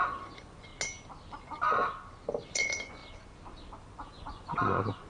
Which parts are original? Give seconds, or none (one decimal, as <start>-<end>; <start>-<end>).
0.7-1.4; 1.8-2.5; 3.0-3.8